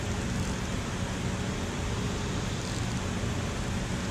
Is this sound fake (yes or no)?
no